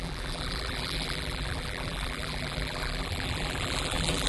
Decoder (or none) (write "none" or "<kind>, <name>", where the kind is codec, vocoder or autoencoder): vocoder, BigVGAN v2